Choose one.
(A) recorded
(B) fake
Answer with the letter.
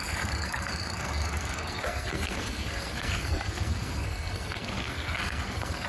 B